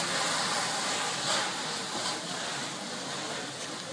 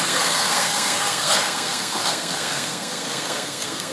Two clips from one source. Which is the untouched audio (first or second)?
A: first